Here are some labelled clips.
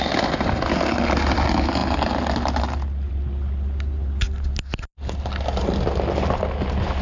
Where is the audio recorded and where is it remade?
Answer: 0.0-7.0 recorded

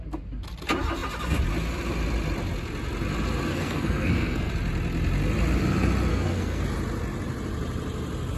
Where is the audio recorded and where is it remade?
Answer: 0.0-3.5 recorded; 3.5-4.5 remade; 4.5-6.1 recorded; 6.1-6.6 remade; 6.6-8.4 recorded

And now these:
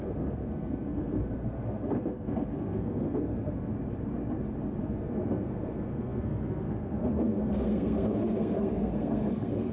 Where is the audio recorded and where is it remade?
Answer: 0.0-3.7 remade; 3.7-4.8 recorded; 4.8-9.7 remade